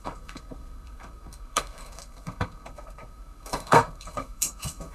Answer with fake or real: fake